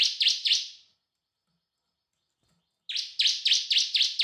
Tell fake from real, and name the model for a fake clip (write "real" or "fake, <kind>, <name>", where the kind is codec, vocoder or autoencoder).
real